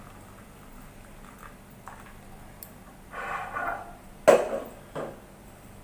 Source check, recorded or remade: recorded